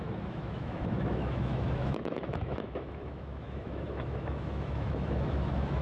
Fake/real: fake